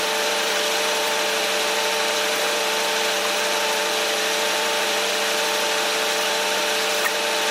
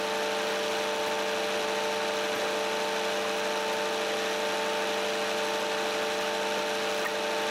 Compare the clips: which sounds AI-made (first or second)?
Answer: first